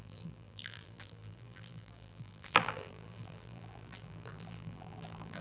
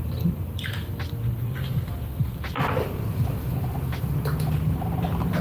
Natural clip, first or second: second